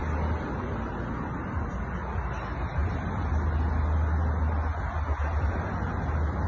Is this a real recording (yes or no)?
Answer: yes